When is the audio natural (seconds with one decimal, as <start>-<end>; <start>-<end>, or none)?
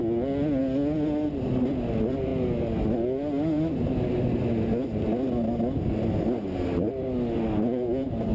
0.0-8.3